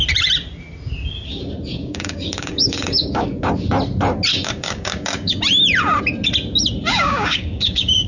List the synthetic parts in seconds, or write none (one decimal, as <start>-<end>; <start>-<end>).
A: 1.7-3.5; 4.3-5.4; 6.9-8.1